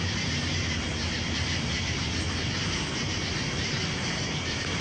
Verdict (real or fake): fake